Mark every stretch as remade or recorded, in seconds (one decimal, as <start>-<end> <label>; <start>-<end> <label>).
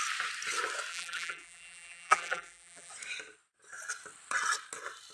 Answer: 0.0-0.9 recorded; 0.9-2.9 remade; 2.9-5.1 recorded